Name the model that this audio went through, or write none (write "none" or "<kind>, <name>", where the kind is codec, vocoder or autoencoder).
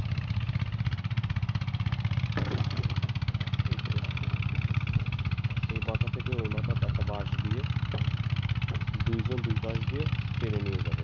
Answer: none